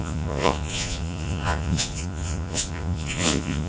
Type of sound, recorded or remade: remade